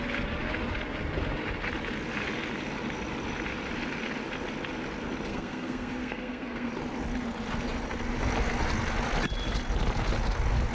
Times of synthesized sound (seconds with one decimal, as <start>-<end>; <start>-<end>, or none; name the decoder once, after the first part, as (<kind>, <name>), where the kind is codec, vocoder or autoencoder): 5.3-6.7 (codec, SNAC)